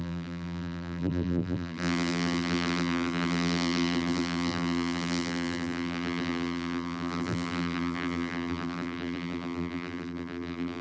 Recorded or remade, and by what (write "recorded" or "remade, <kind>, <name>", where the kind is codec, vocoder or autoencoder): remade, vocoder, BigVGAN v2